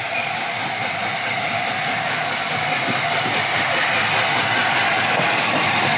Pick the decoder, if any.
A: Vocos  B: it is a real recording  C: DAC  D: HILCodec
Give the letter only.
B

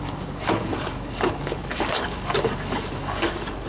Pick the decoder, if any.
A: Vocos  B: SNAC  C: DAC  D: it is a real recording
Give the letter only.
C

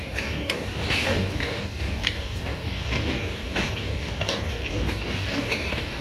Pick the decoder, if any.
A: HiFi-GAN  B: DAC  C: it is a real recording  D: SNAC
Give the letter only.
B